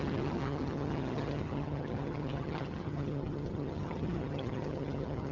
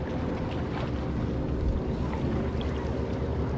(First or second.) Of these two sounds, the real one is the second